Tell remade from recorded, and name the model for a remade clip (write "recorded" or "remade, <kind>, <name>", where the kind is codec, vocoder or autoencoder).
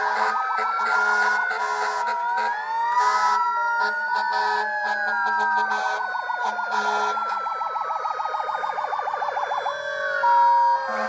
recorded